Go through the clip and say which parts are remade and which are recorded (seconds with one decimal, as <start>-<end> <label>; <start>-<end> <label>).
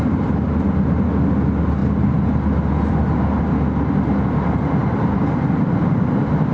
0.0-6.5 recorded